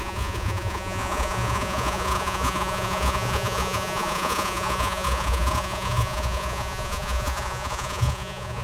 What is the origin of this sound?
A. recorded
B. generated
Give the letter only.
B